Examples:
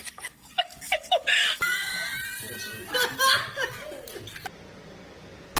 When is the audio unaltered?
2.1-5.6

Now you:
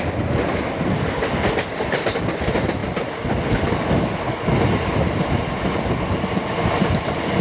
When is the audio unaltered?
0.0-7.4

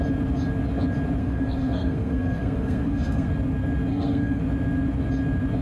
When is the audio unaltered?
0.0-1.2; 3.3-3.9; 4.4-5.6

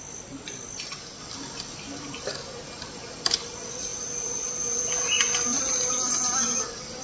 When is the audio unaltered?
0.0-7.0

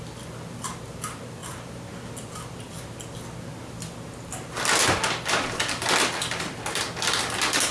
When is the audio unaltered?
0.0-7.7

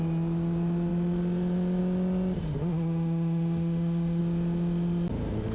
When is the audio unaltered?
0.0-2.6; 4.2-5.5

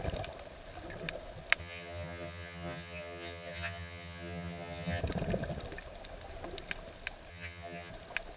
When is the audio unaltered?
0.0-1.6; 5.0-7.3; 7.9-8.4